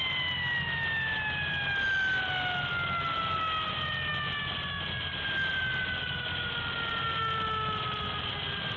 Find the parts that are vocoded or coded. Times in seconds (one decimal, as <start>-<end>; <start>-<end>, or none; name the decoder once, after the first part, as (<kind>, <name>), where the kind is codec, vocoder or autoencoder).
none